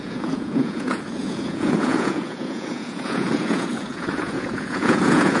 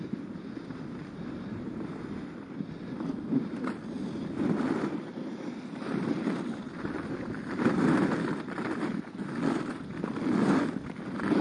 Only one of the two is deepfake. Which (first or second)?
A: first